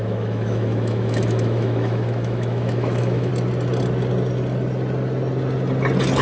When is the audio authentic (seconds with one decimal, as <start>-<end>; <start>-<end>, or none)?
3.3-6.2

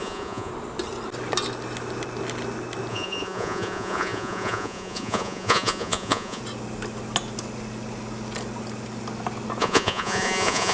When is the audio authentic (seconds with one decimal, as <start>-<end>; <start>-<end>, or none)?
0.5-2.9; 6.4-9.6